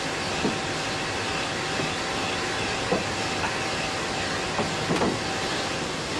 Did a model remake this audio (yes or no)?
no